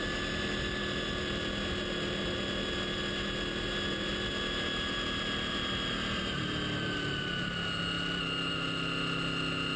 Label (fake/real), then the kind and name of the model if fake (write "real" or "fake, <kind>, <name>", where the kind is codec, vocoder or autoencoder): real